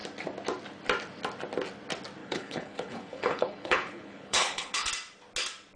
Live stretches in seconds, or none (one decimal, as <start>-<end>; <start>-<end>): 0.0-2.2; 4.9-5.8